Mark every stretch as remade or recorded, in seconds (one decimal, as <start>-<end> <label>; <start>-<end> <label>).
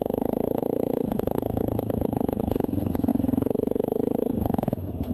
0.0-5.1 remade